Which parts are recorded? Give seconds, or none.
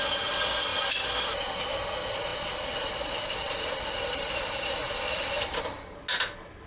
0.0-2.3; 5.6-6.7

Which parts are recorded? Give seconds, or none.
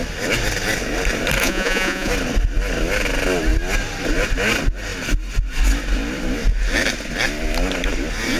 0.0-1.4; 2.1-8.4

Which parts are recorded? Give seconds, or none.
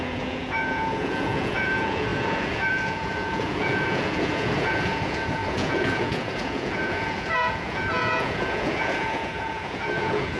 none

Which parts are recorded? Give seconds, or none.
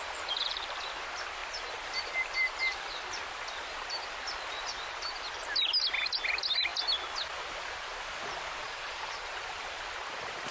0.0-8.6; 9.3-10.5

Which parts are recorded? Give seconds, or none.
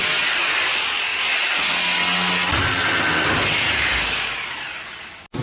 0.0-5.4